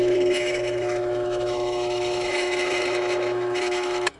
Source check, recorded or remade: remade